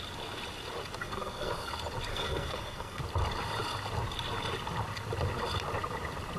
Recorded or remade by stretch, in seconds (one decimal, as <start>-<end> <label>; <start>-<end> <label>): 0.0-1.0 recorded; 1.0-1.7 remade; 1.7-2.1 recorded; 2.1-3.0 remade; 3.0-6.4 recorded